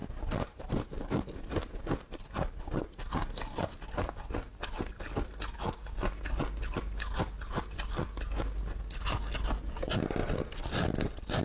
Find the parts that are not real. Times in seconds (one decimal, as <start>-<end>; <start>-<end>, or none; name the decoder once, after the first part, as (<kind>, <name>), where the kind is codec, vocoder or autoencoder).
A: 0.0-3.9 (vocoder, BigVGAN v2)